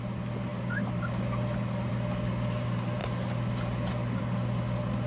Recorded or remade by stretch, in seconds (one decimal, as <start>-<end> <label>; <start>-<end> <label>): 0.0-5.1 recorded